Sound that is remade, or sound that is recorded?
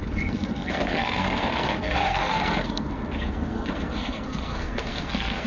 remade